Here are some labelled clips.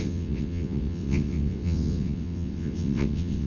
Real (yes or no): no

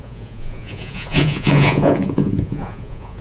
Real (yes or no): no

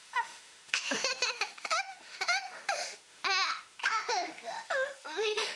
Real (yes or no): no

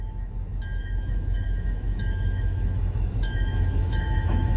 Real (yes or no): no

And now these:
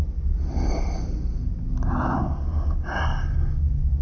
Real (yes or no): yes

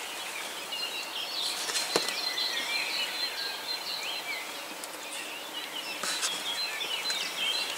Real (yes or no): yes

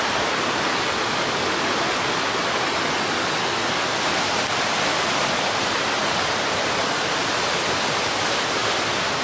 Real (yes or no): yes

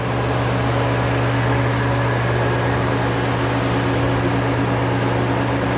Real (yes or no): yes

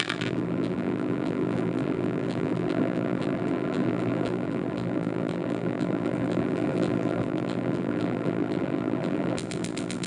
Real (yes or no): no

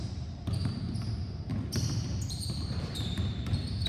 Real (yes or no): no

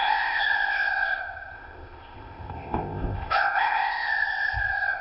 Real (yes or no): no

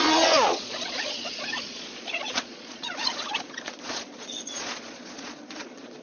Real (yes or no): no